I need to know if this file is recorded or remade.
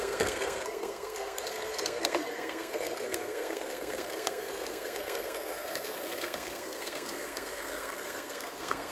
remade